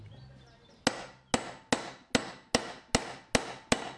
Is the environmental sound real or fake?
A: real